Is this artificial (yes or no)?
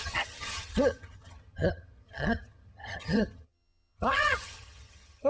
yes